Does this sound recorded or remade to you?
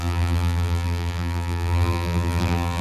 remade